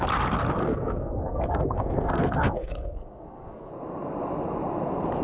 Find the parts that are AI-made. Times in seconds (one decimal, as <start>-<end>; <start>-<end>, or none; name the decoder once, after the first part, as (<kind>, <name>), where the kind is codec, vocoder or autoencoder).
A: 0.6-3.7 (codec, SNAC)